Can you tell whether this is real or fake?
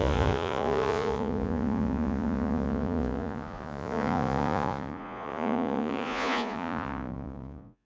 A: fake